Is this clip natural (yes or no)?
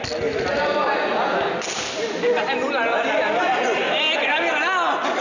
yes